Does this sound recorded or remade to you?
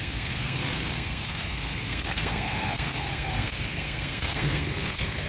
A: remade